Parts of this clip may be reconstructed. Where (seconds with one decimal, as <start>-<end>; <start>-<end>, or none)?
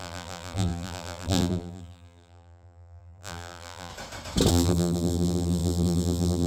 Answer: 0.0-3.9; 4.5-6.5